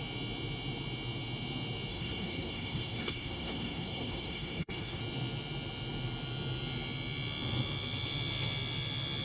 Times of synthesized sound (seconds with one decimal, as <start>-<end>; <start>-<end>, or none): 1.9-5.0